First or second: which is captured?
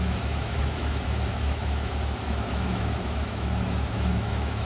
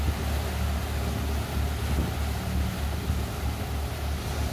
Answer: second